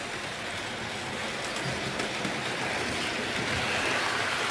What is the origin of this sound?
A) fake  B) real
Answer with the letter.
B